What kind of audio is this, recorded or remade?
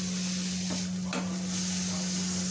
recorded